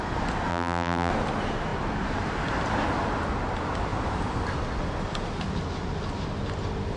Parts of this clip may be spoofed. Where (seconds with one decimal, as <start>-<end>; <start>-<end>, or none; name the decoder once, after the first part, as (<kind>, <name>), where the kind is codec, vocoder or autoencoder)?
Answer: 0.5-1.1 (vocoder, BigVGAN v2)